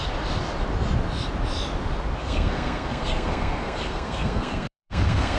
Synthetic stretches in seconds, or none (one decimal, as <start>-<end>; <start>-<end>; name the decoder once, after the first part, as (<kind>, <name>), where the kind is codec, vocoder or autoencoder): 2.2-5.4 (codec, SNAC)